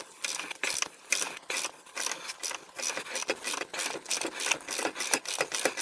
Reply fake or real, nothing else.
real